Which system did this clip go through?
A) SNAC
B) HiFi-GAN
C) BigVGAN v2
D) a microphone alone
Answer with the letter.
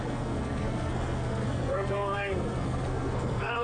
A